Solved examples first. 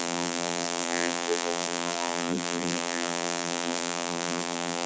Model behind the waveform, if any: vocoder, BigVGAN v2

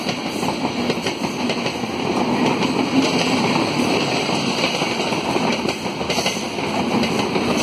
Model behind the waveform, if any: none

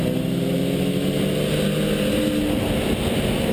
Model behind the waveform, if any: none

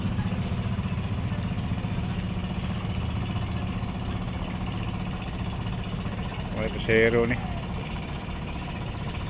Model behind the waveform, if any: none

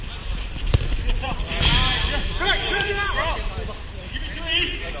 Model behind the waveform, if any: vocoder, BigVGAN v2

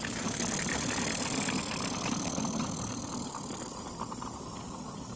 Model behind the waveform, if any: vocoder, BigVGAN v2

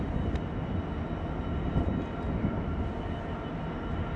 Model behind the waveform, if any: none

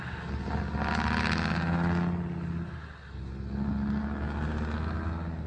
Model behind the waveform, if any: none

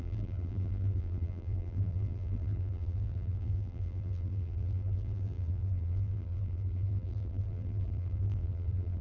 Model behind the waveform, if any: vocoder, BigVGAN v2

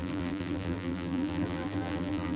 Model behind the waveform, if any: vocoder, BigVGAN v2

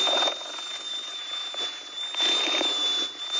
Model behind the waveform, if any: none